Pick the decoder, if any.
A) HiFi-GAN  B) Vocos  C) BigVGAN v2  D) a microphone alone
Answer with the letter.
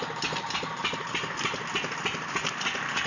D